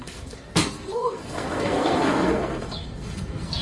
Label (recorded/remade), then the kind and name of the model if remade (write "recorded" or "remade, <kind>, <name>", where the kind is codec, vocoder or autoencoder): remade, codec, SNAC